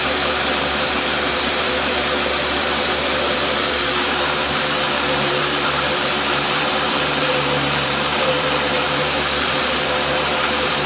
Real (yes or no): no